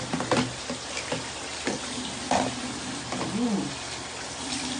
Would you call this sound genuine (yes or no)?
yes